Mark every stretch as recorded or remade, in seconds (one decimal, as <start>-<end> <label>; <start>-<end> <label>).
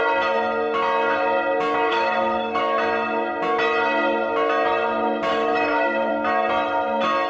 0.0-1.9 recorded; 1.9-2.6 remade; 2.6-5.3 recorded; 5.3-6.1 remade; 6.1-7.3 recorded